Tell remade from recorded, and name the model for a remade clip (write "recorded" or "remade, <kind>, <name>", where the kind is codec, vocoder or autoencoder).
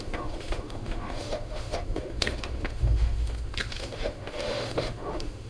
remade, autoencoder, DAC-VAE